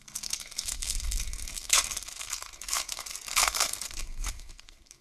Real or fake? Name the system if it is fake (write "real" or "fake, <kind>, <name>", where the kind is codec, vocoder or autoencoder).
fake, codec, SNAC